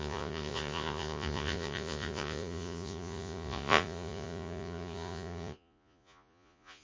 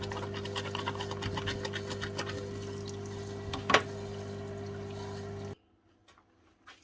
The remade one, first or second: first